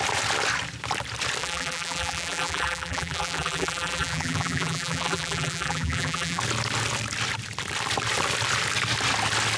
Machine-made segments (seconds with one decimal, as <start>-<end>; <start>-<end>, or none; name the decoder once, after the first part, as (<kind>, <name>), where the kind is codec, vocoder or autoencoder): 1.4-6.4 (vocoder, BigVGAN v2)